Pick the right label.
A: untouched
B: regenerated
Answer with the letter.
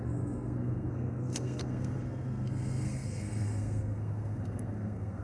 B